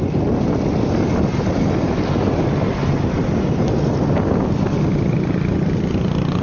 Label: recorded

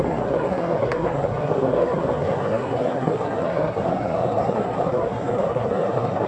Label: remade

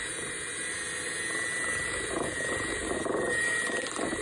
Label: recorded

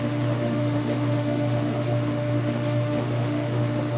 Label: remade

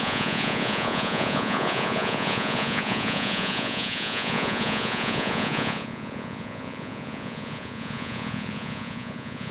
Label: remade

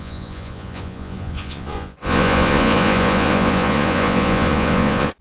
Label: remade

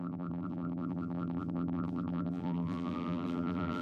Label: remade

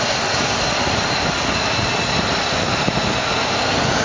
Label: recorded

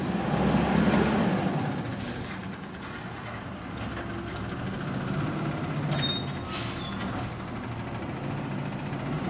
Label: recorded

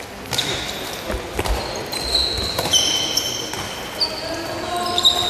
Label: recorded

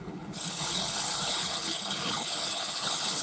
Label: remade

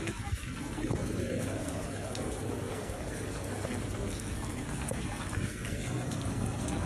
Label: remade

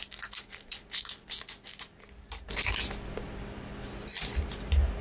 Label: recorded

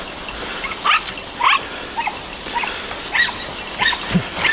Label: recorded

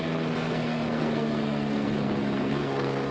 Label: remade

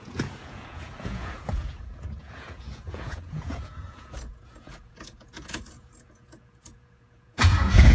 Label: remade